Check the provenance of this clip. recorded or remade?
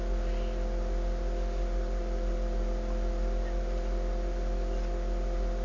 recorded